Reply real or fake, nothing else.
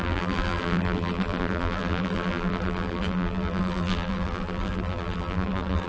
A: fake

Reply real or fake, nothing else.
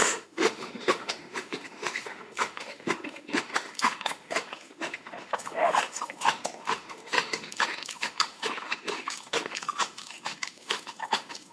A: fake